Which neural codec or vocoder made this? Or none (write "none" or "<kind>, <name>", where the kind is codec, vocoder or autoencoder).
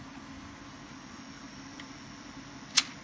none